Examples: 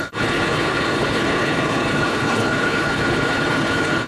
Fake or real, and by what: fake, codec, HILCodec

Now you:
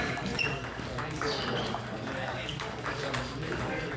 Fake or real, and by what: fake, codec, DAC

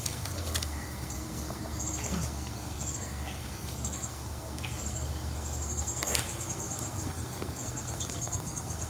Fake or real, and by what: fake, codec, SNAC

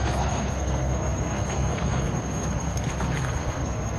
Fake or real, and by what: fake, codec, SNAC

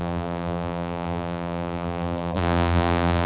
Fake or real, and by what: fake, vocoder, BigVGAN v2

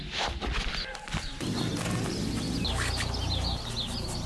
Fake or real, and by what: real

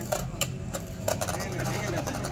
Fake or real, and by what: fake, vocoder, BigVGAN v2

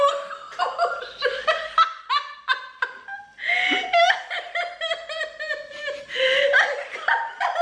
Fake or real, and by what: real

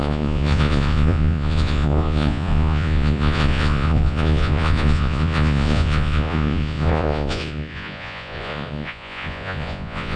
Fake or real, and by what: fake, vocoder, Vocos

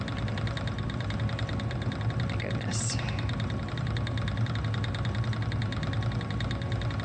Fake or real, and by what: real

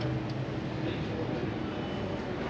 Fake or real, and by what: real